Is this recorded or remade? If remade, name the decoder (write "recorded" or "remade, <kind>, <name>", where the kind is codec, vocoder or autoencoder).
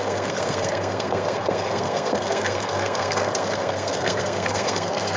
remade, codec, SNAC